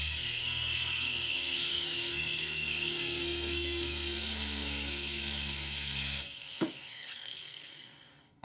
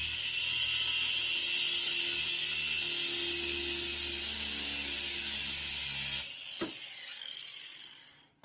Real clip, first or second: second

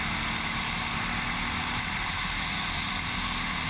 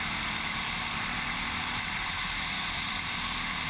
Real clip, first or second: first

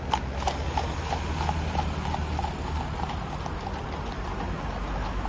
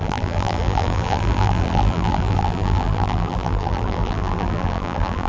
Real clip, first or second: first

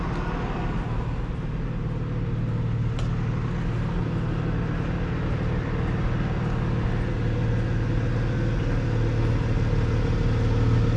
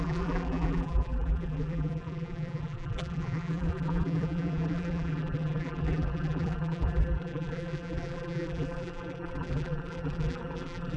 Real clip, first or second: first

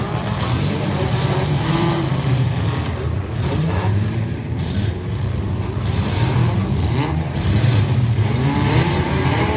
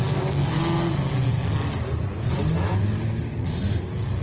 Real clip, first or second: second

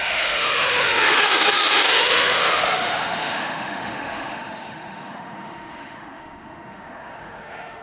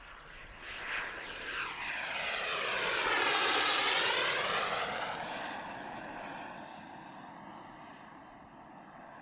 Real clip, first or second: second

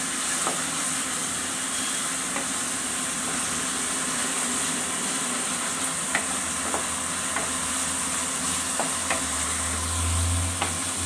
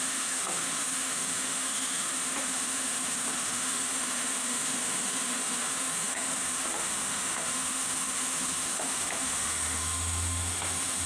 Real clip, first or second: first